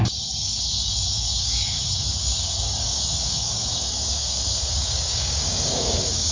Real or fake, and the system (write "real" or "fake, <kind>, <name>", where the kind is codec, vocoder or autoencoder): fake, codec, DAC